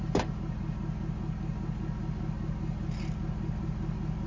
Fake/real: real